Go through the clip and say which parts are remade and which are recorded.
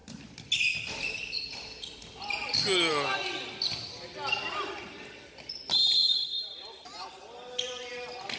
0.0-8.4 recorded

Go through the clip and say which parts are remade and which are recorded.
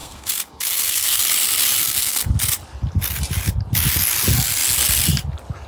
0.0-1.2 remade; 1.2-1.8 recorded; 1.8-2.3 remade; 2.3-5.7 recorded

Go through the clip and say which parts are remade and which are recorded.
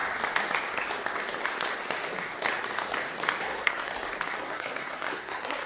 0.0-3.4 recorded; 3.4-3.9 remade; 3.9-4.4 recorded; 4.4-5.7 remade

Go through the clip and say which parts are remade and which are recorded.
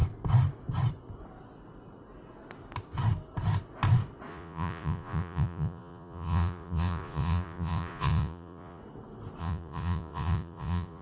0.0-4.3 recorded; 4.3-8.8 remade; 8.8-9.4 recorded; 9.4-11.0 remade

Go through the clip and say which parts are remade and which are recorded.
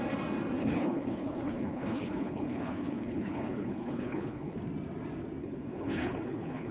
0.0-0.6 recorded; 0.6-4.6 remade; 4.6-5.4 recorded; 5.4-6.7 remade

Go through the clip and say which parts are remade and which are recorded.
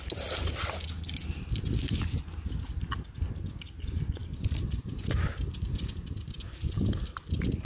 0.0-7.6 recorded